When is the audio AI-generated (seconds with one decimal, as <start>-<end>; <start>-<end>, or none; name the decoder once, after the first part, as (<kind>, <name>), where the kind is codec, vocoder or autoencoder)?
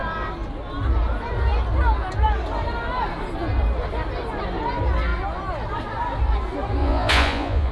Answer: 6.8-7.7 (vocoder, Vocos)